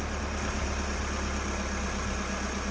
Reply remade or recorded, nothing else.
recorded